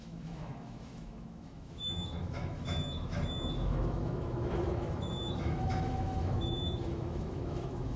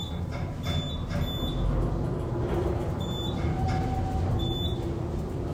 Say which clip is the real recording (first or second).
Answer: second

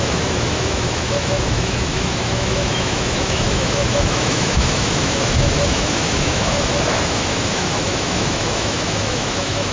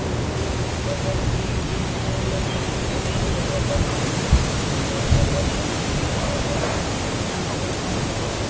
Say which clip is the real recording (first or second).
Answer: second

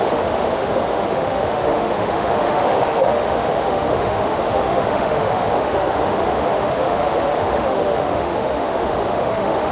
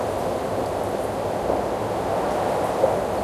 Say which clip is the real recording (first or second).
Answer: second